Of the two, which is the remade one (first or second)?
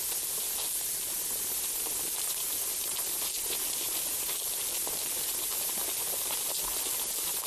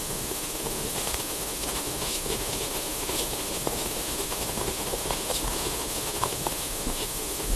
second